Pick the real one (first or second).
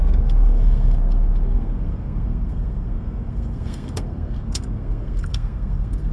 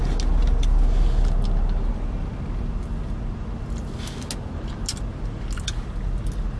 second